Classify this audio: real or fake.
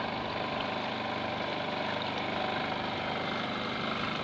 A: real